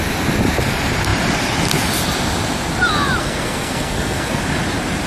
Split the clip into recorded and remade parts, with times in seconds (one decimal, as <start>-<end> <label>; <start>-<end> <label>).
0.0-3.2 recorded; 3.2-4.4 remade; 4.4-5.1 recorded

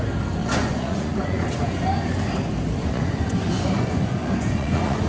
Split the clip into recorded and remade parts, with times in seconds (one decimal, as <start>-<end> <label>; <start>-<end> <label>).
0.0-0.4 recorded; 0.4-1.7 remade; 1.7-2.8 recorded; 2.8-5.1 remade

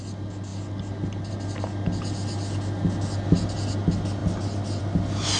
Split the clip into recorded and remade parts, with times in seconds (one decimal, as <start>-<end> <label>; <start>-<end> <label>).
0.0-5.4 recorded

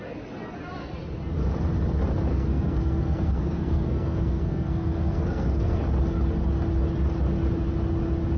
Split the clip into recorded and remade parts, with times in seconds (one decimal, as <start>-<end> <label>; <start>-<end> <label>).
0.0-2.3 recorded; 2.3-5.8 remade; 5.8-8.4 recorded